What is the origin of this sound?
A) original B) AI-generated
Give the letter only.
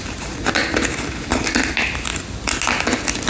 A